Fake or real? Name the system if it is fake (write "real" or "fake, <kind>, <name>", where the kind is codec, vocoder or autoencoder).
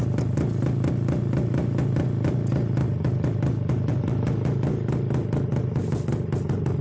real